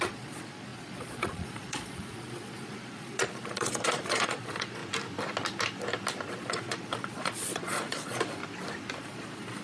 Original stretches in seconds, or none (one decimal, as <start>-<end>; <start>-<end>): 4.8-6.3; 8.4-9.0